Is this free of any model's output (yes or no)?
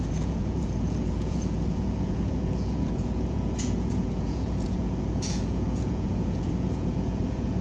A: no